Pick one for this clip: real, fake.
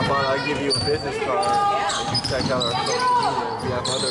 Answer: real